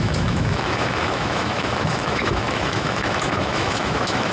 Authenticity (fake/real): fake